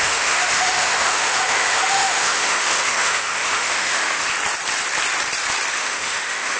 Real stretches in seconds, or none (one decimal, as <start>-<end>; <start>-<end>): 4.3-5.7